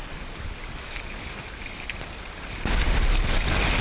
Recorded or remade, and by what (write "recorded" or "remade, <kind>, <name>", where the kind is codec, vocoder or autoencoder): recorded